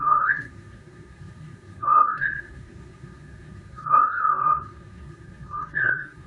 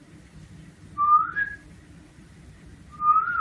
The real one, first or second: second